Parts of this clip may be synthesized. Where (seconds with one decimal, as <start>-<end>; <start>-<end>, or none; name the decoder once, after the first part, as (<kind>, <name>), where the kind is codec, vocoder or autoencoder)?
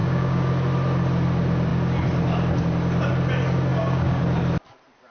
0.0-0.5 (codec, DAC); 3.7-4.2